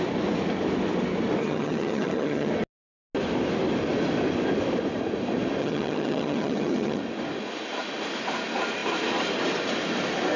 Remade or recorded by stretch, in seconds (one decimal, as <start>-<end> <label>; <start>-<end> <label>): 0.0-1.4 recorded; 1.4-2.5 remade; 2.5-5.6 recorded; 5.6-7.0 remade; 7.0-10.4 recorded